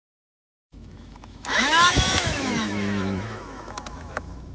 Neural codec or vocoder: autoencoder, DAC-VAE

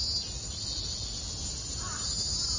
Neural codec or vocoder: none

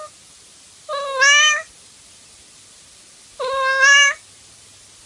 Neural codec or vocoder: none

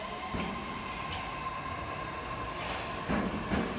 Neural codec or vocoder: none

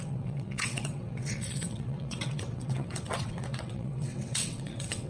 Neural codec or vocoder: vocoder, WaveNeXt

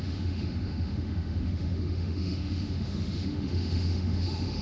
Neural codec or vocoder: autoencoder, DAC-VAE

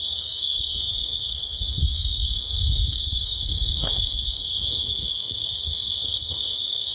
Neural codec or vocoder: codec, SNAC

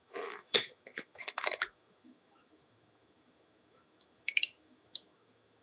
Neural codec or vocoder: autoencoder, DAC-VAE